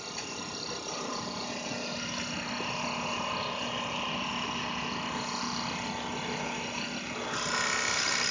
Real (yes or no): yes